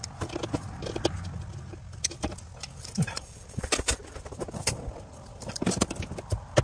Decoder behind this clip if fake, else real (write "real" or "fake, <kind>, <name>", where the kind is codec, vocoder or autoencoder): real